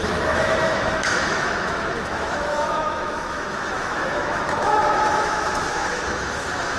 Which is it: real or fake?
fake